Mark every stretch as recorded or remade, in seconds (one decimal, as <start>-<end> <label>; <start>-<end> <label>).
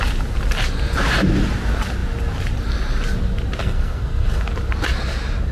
0.0-3.6 recorded; 3.6-4.4 remade; 4.4-5.5 recorded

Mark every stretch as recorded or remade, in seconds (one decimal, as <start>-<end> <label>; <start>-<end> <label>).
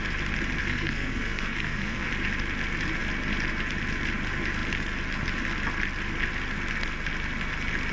0.0-0.6 recorded; 0.6-2.1 remade; 2.1-7.9 recorded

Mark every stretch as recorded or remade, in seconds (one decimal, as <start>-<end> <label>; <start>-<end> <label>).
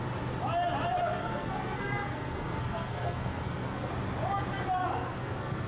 0.0-1.1 recorded; 1.1-3.9 remade; 3.9-4.8 recorded; 4.8-5.7 remade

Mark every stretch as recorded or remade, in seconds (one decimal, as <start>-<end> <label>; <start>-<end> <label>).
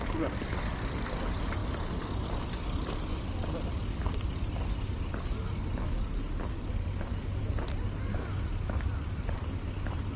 0.0-10.2 recorded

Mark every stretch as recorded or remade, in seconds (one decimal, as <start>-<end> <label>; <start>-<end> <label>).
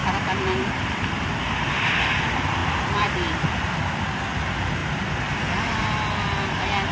0.0-6.9 recorded